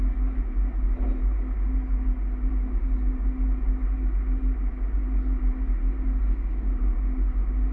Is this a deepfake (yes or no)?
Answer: no